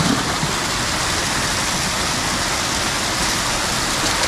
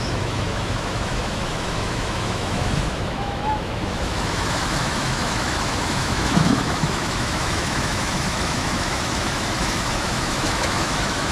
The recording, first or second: first